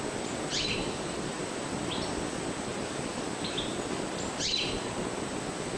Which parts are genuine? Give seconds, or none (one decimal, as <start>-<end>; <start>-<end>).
0.0-0.8; 1.7-2.7; 3.3-5.8